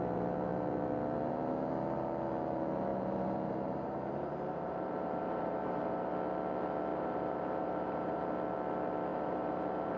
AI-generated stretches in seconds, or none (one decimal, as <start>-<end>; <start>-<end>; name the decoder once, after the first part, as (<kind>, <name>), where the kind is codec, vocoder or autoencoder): 2.9-6.1 (vocoder, BigVGAN v2); 6.9-8.2; 9.1-10.0